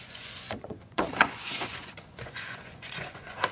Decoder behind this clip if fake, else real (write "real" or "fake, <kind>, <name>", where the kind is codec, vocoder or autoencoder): fake, vocoder, Vocos